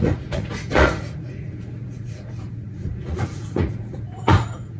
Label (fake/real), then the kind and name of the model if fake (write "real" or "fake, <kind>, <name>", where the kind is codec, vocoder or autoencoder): fake, vocoder, Vocos